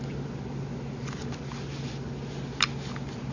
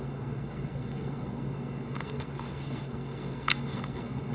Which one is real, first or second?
first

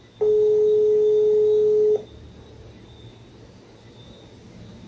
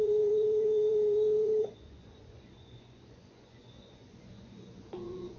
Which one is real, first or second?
first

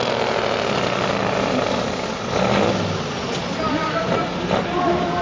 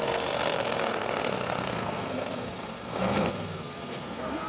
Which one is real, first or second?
first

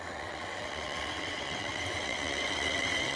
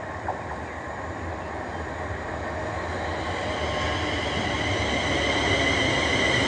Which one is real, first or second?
second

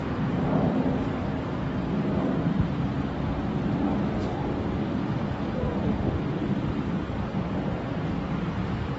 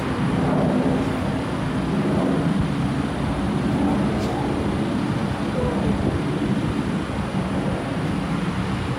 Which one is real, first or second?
second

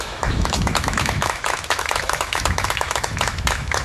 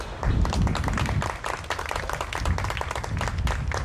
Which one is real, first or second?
second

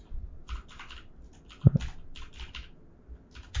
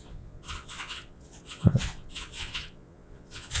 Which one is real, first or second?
first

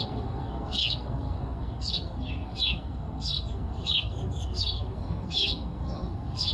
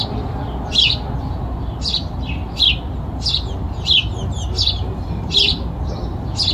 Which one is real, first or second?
second